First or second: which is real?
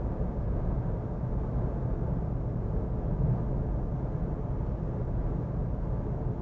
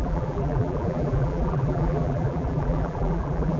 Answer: first